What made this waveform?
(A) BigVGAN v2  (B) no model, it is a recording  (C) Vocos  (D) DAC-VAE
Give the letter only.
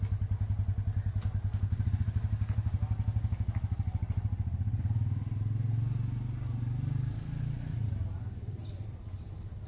B